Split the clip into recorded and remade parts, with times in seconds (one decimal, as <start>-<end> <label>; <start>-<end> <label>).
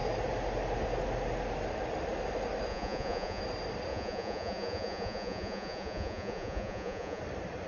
0.0-2.7 recorded; 2.7-3.4 remade; 3.4-3.9 recorded; 3.9-7.2 remade; 7.2-7.7 recorded